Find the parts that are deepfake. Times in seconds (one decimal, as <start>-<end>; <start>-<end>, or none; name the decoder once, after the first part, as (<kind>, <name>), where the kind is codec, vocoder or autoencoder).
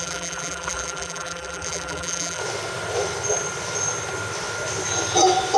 0.0-2.4 (vocoder, BigVGAN v2)